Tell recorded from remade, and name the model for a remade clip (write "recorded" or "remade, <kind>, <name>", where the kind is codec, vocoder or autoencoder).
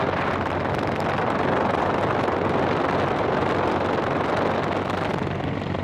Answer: recorded